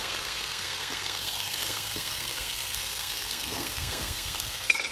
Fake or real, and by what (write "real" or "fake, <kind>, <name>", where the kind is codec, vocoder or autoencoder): fake, codec, SNAC